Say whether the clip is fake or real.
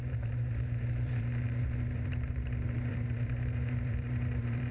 fake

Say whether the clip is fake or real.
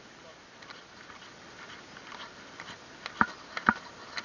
real